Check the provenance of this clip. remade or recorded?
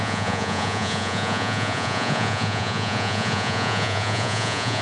remade